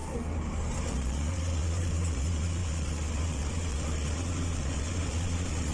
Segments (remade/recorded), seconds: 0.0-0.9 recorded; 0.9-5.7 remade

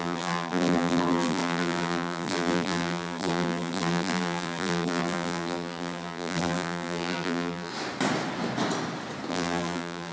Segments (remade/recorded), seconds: 0.0-7.7 remade; 7.7-9.3 recorded; 9.3-10.1 remade

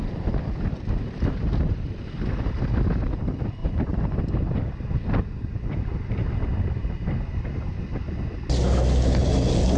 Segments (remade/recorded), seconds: 0.0-3.6 recorded; 3.6-4.2 remade; 4.2-9.8 recorded

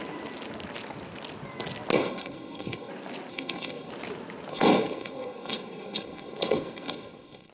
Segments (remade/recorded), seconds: 0.0-1.9 recorded; 1.9-2.9 remade; 2.9-3.3 recorded; 3.3-3.9 remade; 3.9-4.5 recorded; 4.5-7.5 remade

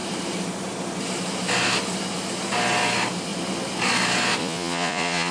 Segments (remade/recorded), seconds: 0.0-4.4 recorded; 4.4-5.3 remade

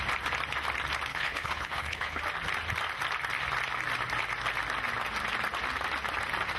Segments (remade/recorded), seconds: 0.0-1.1 recorded; 1.1-2.2 remade; 2.2-6.6 recorded

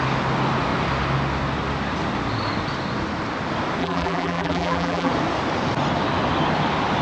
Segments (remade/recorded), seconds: 0.0-3.8 recorded; 3.8-5.1 remade; 5.1-7.0 recorded

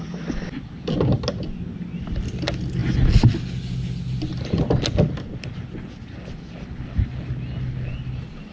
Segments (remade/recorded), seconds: 0.0-8.5 recorded